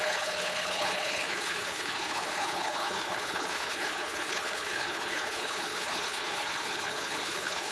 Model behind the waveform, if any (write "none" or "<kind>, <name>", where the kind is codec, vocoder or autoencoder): codec, HILCodec